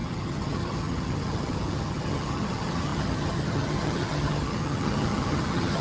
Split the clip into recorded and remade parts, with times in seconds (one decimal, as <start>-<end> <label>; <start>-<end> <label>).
0.0-5.8 remade